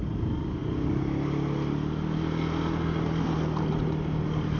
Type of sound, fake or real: real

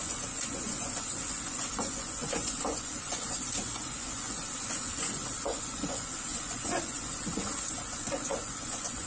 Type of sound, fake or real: fake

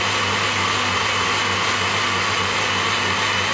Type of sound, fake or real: real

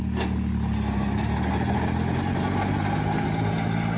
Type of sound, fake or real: real